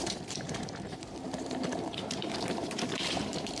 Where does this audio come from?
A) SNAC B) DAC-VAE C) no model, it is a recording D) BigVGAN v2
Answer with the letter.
D